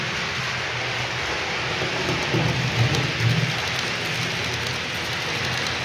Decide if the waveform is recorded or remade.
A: recorded